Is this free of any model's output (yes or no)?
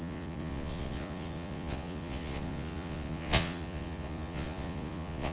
no